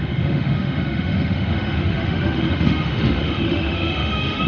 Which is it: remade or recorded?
remade